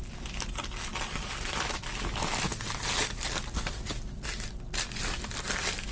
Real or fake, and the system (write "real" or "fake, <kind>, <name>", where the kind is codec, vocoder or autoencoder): real